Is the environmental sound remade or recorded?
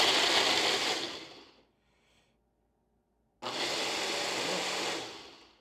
recorded